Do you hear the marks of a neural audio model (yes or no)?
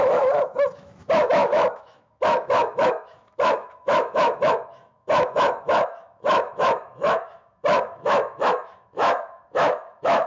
yes